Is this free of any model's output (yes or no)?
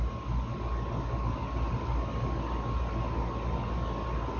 yes